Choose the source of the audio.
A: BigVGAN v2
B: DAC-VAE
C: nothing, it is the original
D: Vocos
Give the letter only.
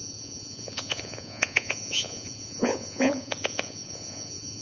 D